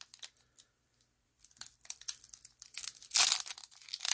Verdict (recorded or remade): recorded